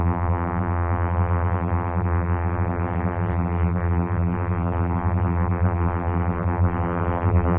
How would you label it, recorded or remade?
remade